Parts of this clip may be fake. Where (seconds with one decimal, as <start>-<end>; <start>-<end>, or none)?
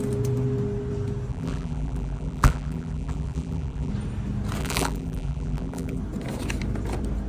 1.3-3.9; 4.6-6.0